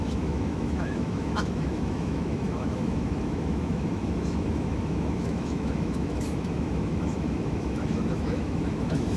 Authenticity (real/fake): fake